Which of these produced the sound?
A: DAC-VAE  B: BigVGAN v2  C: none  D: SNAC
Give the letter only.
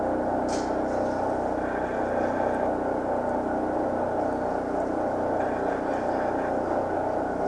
C